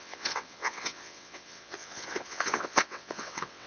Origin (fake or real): fake